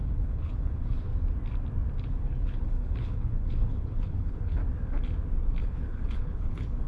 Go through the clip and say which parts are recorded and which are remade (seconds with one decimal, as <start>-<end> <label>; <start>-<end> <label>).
0.0-1.1 remade; 1.1-2.0 recorded; 2.0-4.6 remade; 4.6-5.6 recorded; 5.6-6.9 remade